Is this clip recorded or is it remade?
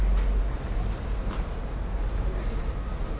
recorded